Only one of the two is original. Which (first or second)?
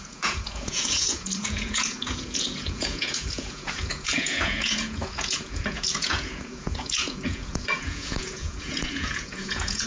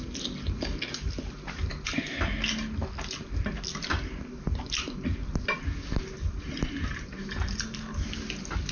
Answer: second